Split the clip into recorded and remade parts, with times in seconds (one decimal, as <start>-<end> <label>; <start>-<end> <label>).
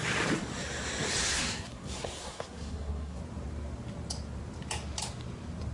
0.0-1.2 recorded; 1.2-3.2 remade; 3.2-5.7 recorded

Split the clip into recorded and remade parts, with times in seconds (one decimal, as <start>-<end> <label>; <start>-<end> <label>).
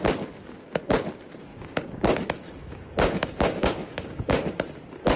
0.0-1.5 recorded; 1.5-4.6 remade; 4.6-5.2 recorded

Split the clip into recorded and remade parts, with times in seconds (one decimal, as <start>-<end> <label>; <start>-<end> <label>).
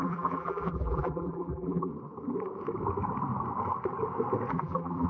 0.0-1.9 remade; 1.9-4.5 recorded; 4.5-5.1 remade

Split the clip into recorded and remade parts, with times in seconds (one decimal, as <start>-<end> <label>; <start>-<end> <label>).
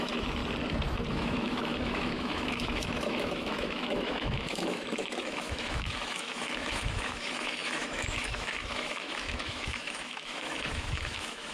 0.0-0.4 remade; 0.4-1.1 recorded; 1.1-11.5 remade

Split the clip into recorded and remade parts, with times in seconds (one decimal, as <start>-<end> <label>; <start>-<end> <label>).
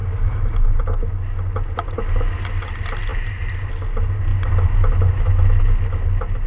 0.0-0.8 remade; 0.8-3.1 recorded; 3.1-3.7 remade; 3.7-6.5 recorded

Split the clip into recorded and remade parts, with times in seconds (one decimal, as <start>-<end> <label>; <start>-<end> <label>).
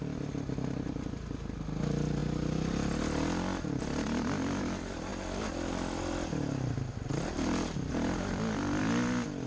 0.0-9.5 recorded